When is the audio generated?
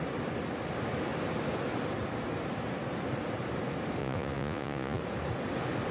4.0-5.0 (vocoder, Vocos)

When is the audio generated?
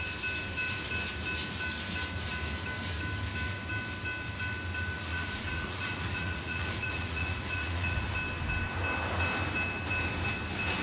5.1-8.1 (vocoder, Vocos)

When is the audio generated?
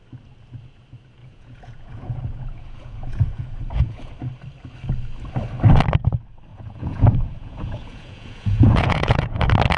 1.2-4.1 (vocoder, Vocos); 6.5-9.4